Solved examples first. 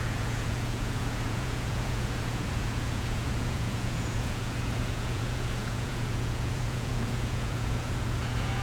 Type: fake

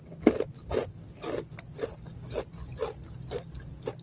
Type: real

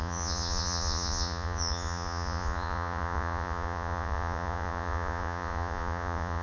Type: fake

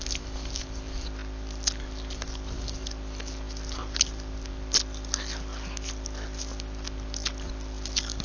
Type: real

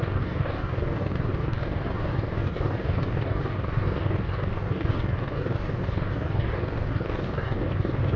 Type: fake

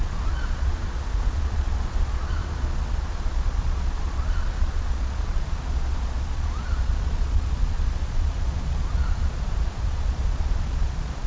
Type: fake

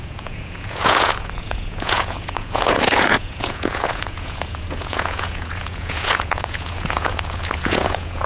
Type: fake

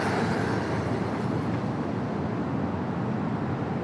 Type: real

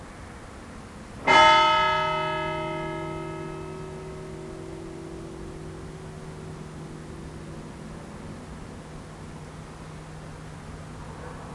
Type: real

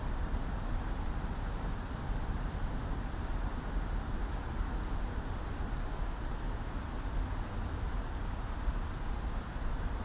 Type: fake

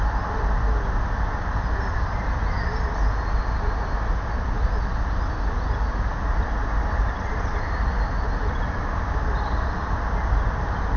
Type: real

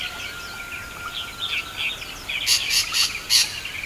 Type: real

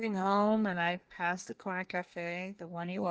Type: fake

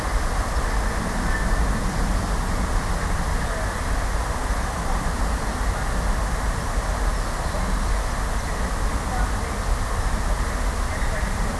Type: real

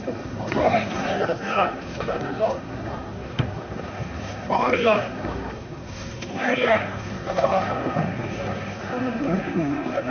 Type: fake